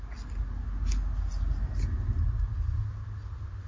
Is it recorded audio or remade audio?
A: recorded